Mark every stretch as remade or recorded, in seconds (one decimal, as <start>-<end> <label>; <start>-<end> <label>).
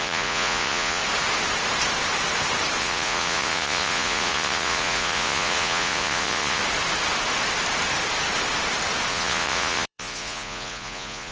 0.0-1.0 remade; 1.0-2.8 recorded; 2.8-6.6 remade; 6.6-9.1 recorded; 9.1-11.3 remade